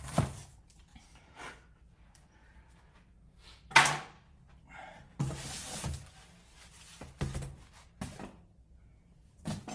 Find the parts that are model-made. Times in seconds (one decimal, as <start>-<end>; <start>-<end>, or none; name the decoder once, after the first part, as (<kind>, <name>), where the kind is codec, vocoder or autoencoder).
0.9-1.5 (vocoder, BigVGAN v2)